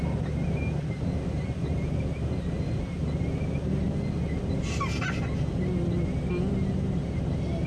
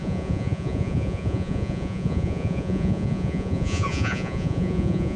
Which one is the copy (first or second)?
second